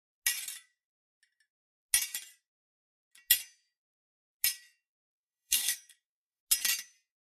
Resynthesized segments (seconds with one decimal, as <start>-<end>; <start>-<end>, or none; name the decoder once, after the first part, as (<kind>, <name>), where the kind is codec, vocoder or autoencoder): 5.1-6.4 (codec, SNAC)